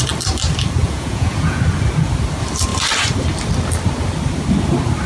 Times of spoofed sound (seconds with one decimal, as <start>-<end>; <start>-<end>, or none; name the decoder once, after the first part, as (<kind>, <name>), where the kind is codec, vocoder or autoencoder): 0.8-1.6 (vocoder, Vocos)